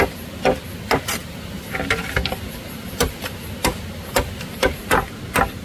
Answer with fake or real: real